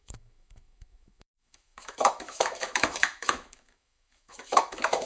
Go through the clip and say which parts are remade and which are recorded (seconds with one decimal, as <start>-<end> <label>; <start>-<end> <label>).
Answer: 0.0-5.1 remade

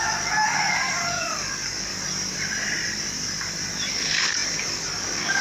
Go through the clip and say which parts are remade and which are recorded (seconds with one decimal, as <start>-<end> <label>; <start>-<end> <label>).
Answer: 0.0-1.9 remade; 1.9-3.9 recorded; 3.9-5.4 remade

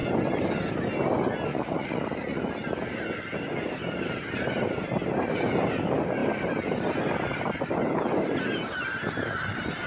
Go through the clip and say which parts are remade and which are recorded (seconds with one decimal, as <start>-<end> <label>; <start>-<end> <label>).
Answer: 0.0-1.5 recorded; 1.5-2.4 remade; 2.4-9.9 recorded

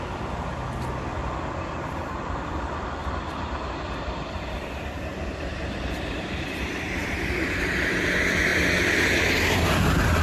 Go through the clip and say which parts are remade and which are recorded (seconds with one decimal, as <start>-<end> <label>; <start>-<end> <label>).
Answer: 0.0-3.0 recorded; 3.0-7.6 remade; 7.6-10.2 recorded

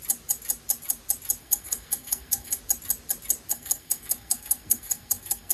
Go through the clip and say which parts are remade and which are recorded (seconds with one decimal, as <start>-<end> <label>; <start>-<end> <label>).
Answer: 0.0-1.4 recorded; 1.4-2.6 remade; 2.6-3.5 recorded; 3.5-5.5 remade